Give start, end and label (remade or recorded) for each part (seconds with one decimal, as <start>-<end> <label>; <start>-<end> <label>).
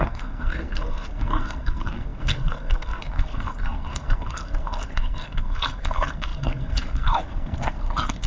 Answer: 0.0-8.3 remade